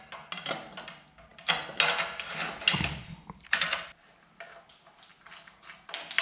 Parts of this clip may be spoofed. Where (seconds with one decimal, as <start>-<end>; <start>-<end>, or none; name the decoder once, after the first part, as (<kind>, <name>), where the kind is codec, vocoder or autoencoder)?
none